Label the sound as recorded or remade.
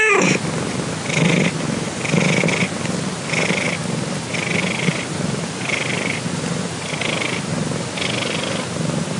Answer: recorded